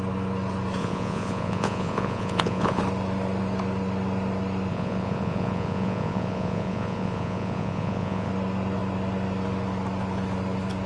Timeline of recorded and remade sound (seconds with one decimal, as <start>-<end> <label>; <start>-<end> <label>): 0.0-0.8 recorded; 0.8-2.8 remade; 2.8-4.7 recorded; 4.7-8.3 remade; 8.3-10.9 recorded